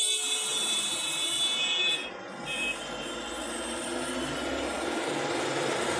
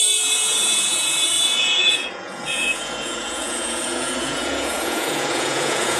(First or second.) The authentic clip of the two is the first